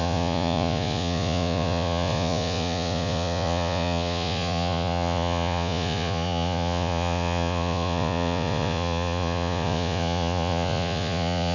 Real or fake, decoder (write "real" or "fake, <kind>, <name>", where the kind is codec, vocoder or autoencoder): fake, vocoder, Vocos